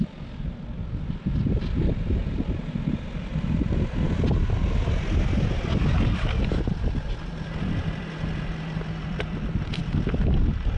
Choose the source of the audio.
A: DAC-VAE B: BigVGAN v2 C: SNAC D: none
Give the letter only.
D